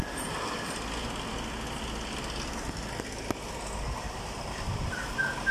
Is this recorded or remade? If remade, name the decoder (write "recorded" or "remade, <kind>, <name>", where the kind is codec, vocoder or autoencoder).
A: recorded